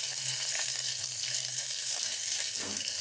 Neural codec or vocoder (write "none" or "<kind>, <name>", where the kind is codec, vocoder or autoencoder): codec, SNAC